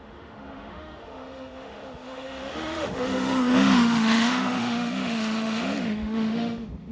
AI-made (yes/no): yes